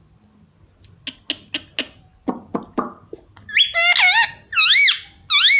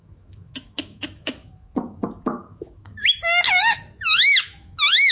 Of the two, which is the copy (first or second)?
second